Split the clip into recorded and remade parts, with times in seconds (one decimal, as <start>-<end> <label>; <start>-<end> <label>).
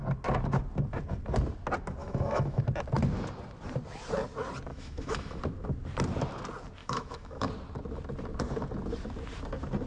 0.0-2.0 recorded; 2.0-2.6 remade; 2.6-4.7 recorded; 4.7-5.4 remade; 5.4-6.8 recorded; 6.8-7.5 remade; 7.5-9.9 recorded